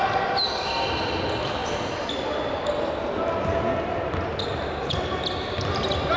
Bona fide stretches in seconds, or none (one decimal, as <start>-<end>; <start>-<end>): 0.0-6.2